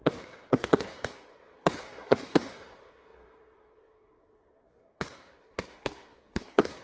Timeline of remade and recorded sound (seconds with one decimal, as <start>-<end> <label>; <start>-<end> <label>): 0.0-6.8 remade